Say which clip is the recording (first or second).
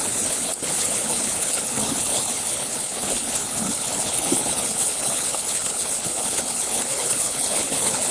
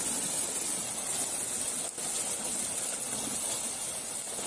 second